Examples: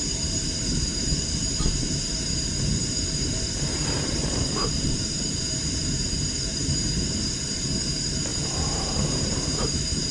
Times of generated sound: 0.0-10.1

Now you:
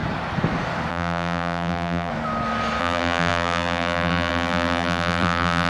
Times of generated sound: 0.9-2.1; 2.8-5.7

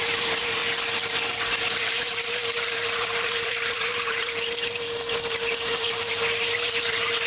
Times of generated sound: 0.0-0.6; 1.7-7.3

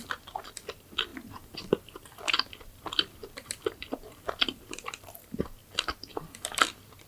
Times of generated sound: 0.0-1.1; 1.7-3.2; 3.8-5.6; 6.1-7.1

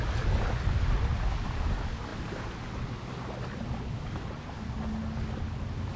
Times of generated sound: none

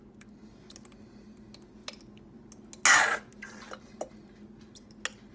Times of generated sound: none

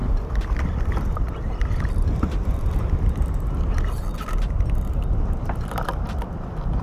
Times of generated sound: 0.0-4.1; 5.9-6.8

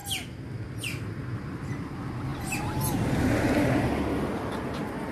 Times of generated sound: none